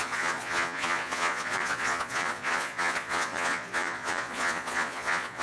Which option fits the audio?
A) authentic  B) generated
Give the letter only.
B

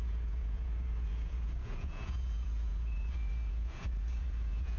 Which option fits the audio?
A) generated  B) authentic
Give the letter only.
A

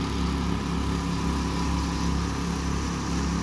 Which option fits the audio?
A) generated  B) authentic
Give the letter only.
B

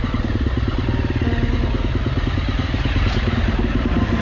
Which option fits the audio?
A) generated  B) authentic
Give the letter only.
B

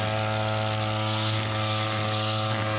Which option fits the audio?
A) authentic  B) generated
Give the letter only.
A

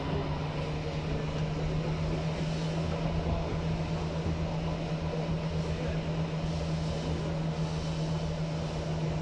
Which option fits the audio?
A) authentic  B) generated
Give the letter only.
A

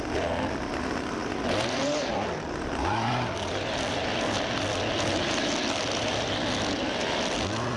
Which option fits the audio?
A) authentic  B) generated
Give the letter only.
A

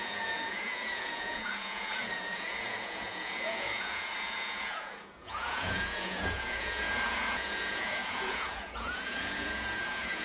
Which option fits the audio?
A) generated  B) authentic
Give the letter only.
A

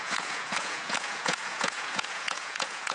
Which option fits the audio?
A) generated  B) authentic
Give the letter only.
A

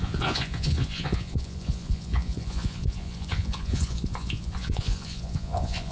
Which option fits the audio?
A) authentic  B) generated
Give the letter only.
B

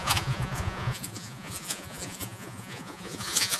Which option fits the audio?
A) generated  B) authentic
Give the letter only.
A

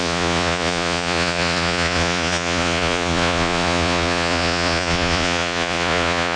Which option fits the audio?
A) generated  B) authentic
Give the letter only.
A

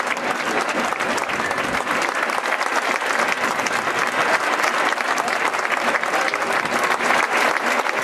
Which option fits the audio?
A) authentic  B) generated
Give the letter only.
A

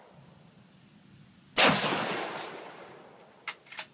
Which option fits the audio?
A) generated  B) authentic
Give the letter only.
B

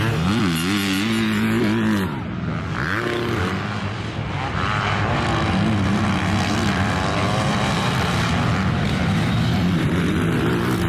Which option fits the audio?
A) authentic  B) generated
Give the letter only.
A